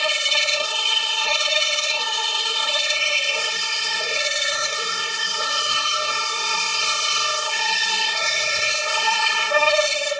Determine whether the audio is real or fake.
fake